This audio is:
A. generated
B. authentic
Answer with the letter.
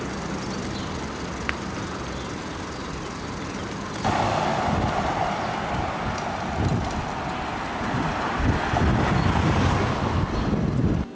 B